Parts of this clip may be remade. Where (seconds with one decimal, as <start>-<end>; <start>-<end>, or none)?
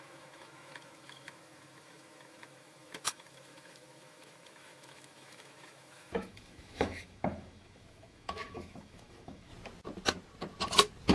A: 0.0-9.5